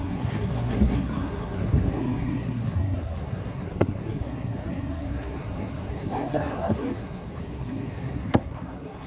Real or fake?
fake